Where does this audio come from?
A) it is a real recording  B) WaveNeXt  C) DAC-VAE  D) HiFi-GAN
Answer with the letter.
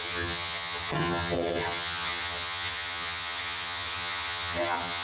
D